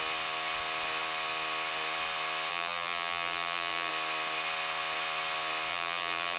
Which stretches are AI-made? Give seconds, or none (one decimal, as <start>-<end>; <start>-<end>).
2.5-3.9; 5.7-6.4